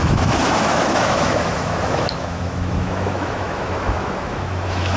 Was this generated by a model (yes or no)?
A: yes